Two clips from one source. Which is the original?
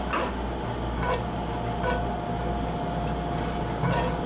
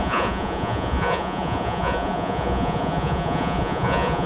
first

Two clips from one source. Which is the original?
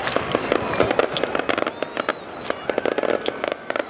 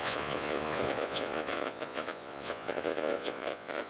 first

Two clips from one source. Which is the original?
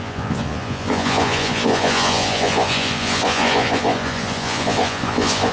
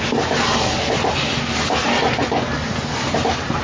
second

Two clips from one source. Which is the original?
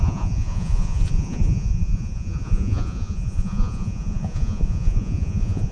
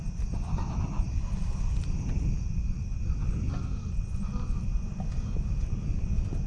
second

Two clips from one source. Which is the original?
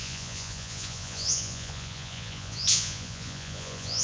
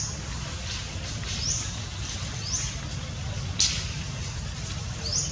second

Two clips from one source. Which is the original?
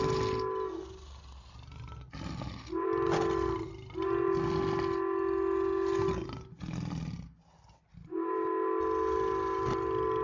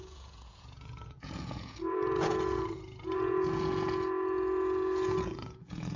first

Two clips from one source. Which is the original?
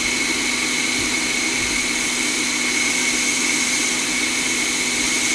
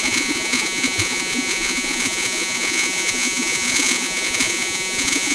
first